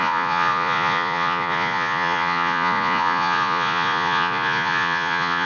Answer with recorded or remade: remade